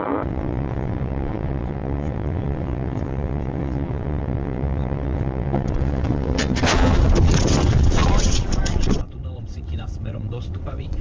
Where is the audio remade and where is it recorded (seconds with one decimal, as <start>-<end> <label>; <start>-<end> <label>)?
0.0-11.0 remade